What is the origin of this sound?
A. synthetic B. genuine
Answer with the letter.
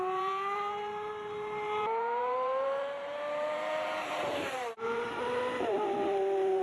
A